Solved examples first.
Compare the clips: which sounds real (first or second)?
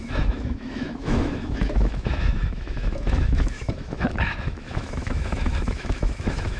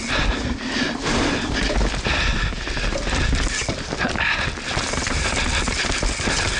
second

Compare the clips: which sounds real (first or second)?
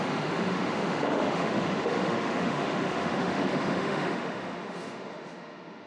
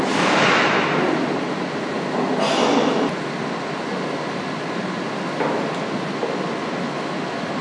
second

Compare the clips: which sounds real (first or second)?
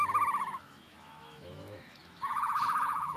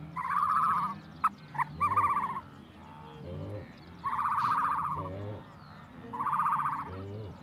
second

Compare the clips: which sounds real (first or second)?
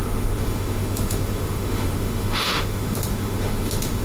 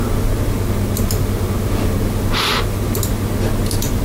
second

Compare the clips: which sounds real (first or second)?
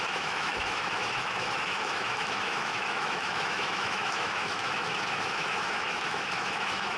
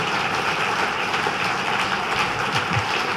second